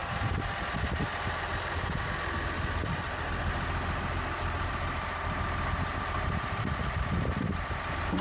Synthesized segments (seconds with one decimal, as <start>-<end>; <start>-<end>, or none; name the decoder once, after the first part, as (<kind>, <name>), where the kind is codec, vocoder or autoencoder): none